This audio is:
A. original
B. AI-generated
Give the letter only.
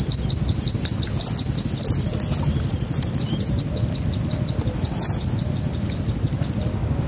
A